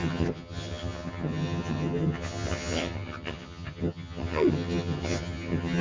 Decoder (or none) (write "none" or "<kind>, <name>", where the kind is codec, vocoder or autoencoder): vocoder, HiFi-GAN